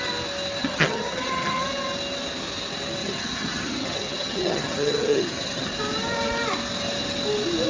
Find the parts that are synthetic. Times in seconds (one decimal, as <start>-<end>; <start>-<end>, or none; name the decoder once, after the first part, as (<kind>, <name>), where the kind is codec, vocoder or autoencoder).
0.6-1.7 (vocoder, HiFi-GAN); 3.0-5.7